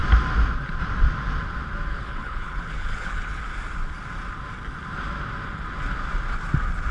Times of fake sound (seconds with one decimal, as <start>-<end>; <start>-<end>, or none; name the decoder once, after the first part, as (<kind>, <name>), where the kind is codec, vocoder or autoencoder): 1.9-3.4 (codec, HILCodec)

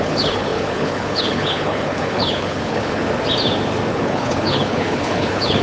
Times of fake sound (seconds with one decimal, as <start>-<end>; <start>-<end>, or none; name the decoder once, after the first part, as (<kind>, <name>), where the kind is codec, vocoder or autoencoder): 0.0-3.0 (codec, HILCodec); 3.9-5.6

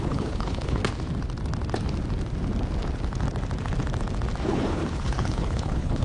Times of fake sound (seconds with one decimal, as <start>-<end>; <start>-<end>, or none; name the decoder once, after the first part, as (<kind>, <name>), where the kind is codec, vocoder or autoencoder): 0.0-0.8 (codec, HILCodec); 4.4-6.0

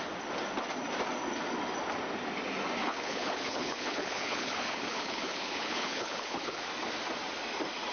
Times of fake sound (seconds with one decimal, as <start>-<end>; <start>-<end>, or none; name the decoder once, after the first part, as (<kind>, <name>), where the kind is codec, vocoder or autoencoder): 2.8-6.6 (codec, HILCodec)

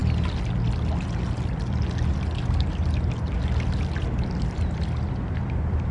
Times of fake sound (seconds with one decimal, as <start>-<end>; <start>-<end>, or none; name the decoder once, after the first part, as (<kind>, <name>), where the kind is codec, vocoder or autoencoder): none

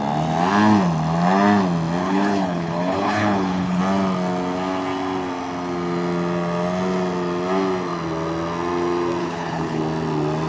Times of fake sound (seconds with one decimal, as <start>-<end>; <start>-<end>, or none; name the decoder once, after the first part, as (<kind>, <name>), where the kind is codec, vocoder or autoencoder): 2.0-3.8 (codec, HILCodec); 9.2-9.8

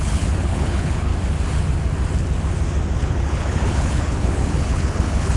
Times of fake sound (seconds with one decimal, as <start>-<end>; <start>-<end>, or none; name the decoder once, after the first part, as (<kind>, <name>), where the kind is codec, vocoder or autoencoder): 0.0-1.1 (codec, HILCodec); 3.0-5.4